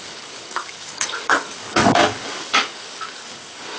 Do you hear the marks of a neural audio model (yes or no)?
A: yes